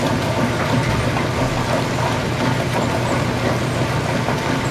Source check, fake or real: real